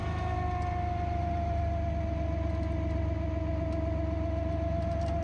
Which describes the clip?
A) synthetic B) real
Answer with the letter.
B